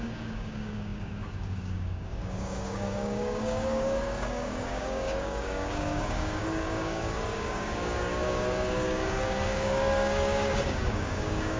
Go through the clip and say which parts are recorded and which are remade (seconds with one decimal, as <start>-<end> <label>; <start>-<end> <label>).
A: 0.0-11.6 remade